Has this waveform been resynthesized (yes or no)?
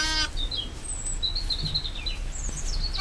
no